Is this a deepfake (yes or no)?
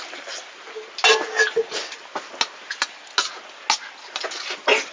no